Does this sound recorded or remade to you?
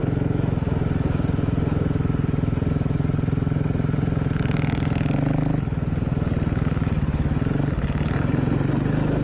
recorded